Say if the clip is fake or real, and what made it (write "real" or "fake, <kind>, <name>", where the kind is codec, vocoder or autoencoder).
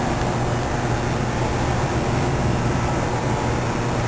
real